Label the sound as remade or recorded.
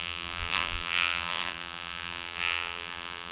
remade